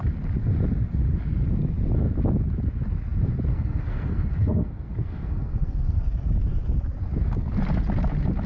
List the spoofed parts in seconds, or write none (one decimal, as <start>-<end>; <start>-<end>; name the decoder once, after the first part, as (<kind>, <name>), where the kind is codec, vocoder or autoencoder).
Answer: 3.5-6.0 (codec, SNAC)